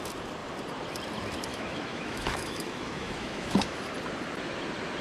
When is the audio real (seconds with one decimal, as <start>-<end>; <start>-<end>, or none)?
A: 0.0-1.5; 3.8-5.0